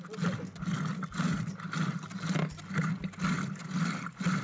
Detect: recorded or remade recorded